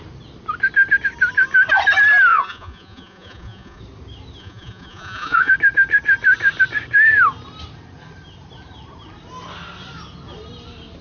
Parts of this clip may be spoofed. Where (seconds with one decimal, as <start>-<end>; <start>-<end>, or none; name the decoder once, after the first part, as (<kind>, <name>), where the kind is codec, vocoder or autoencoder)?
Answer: 2.3-3.8 (vocoder, Vocos); 4.4-5.5